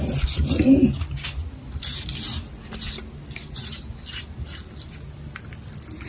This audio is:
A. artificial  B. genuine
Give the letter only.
B